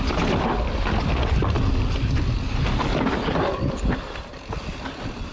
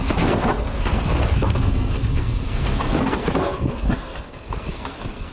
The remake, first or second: second